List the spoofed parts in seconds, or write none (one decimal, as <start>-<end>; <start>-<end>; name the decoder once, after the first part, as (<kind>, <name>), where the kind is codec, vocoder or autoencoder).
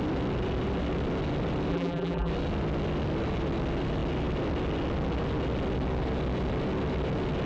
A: 1.7-2.3 (vocoder, BigVGAN v2)